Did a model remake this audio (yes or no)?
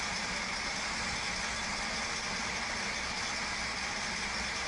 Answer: no